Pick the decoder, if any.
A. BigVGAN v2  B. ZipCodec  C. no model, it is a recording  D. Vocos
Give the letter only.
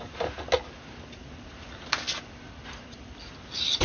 C